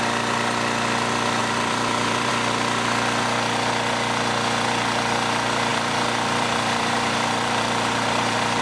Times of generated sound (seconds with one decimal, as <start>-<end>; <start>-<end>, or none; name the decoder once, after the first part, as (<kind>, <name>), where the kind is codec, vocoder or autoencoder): 1.4-2.3 (vocoder, BigVGAN v2); 5.7-8.6